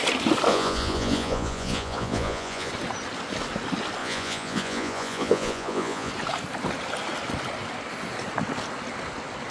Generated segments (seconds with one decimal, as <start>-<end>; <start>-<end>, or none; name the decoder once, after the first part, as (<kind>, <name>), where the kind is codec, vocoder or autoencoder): 0.5-2.7 (vocoder, Vocos); 4.0-6.1